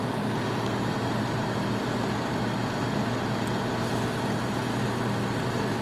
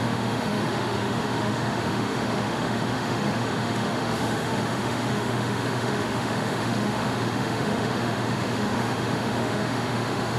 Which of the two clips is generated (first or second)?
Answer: second